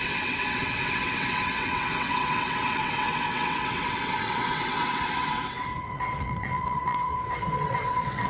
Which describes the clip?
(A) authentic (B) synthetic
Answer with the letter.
B